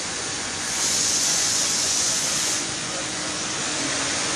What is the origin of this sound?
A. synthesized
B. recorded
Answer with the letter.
A